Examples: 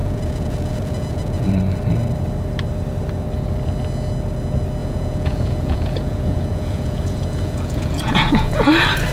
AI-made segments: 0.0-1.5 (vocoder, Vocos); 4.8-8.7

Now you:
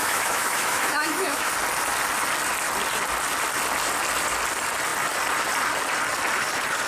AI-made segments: 0.0-1.5 (autoencoder, DAC-VAE)

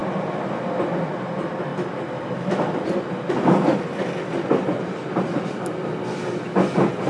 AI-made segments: none

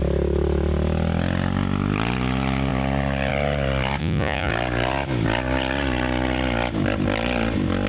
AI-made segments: 4.0-4.5 (vocoder, Vocos)

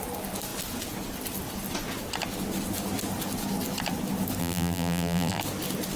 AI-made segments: 4.4-5.4 (vocoder, BigVGAN v2)

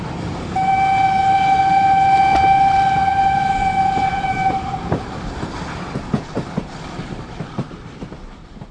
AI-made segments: none